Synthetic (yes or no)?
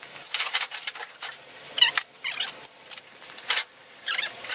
yes